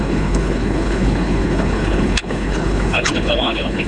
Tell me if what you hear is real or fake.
fake